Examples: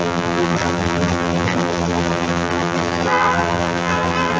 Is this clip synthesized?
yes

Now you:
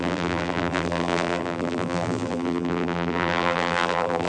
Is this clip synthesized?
yes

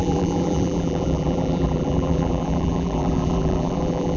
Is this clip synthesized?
yes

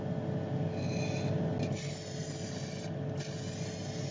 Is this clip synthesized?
no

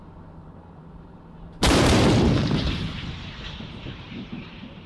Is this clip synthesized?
yes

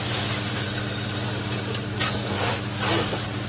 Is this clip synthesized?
no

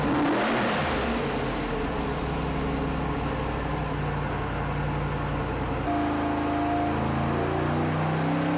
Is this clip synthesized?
no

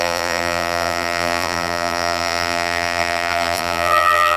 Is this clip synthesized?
yes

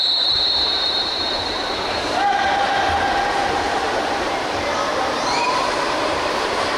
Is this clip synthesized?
yes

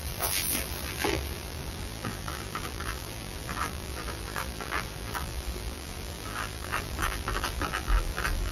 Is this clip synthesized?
yes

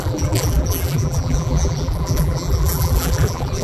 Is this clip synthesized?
yes